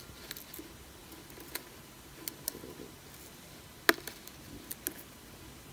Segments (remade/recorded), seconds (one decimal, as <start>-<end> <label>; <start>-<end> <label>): 0.0-5.7 recorded